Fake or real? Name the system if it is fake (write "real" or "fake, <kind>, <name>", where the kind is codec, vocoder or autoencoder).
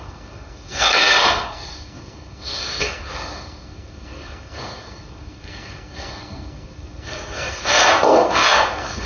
fake, codec, SNAC